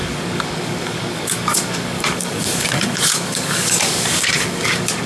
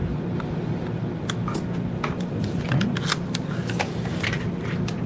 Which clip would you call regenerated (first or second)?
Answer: first